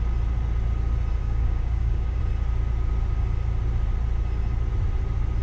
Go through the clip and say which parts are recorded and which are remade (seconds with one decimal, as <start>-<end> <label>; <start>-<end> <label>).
0.0-1.2 recorded; 1.2-2.2 remade; 2.2-5.4 recorded